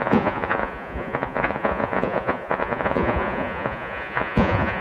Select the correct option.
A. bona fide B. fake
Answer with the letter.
B